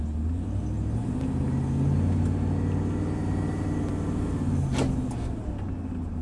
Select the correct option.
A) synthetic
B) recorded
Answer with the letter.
B